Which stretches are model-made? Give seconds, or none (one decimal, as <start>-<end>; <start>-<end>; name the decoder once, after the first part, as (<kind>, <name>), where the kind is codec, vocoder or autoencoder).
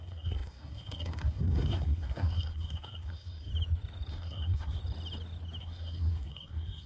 0.0-3.5 (codec, SNAC); 4.1-4.8; 5.6-6.9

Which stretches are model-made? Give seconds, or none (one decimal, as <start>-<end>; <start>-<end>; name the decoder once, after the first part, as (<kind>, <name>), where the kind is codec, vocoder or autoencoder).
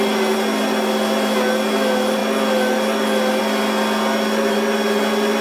none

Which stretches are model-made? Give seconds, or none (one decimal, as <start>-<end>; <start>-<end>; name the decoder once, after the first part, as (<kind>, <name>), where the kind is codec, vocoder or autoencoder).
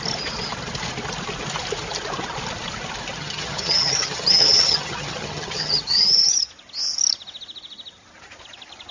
3.2-6.5 (vocoder, HiFi-GAN)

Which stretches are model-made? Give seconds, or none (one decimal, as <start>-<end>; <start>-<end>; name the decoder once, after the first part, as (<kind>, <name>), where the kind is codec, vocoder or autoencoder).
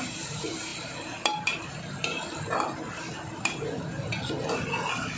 none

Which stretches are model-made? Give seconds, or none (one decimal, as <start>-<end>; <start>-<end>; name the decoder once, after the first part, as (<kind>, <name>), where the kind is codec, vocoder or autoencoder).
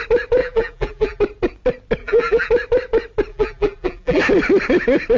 0.4-1.2 (vocoder, BigVGAN v2); 2.0-2.5; 3.3-4.2